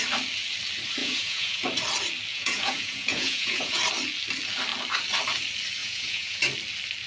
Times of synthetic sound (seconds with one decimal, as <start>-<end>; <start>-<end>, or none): 1.0-1.6; 2.3-3.8; 5.8-6.4